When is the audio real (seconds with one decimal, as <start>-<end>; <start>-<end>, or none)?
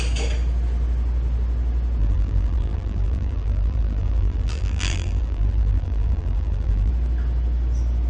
0.0-2.0; 6.9-8.1